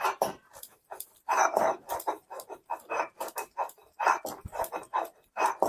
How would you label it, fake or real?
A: fake